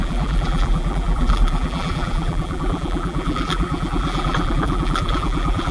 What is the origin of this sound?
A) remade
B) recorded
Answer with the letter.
A